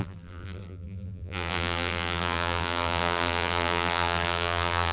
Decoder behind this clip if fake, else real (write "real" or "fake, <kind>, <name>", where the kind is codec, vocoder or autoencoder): fake, vocoder, BigVGAN v2